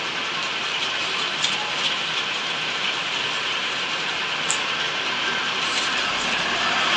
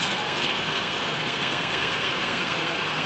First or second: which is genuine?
first